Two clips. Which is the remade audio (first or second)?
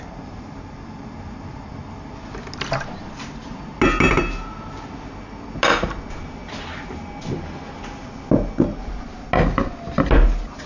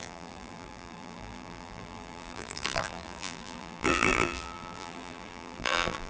second